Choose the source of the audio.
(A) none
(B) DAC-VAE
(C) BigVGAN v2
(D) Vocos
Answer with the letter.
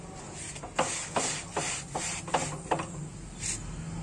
A